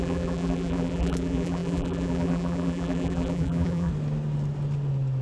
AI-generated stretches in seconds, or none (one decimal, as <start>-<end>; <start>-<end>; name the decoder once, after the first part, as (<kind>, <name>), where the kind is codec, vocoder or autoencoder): 0.0-3.9 (vocoder, BigVGAN v2)